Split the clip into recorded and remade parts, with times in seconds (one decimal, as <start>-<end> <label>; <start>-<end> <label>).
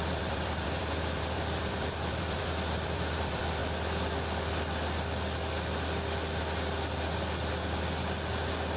0.0-3.6 remade; 3.6-8.8 recorded